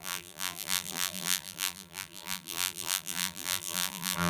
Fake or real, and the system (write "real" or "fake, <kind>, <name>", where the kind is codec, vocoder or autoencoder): fake, vocoder, BigVGAN v2